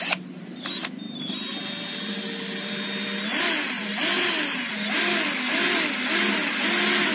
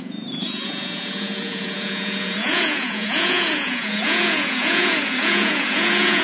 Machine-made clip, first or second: second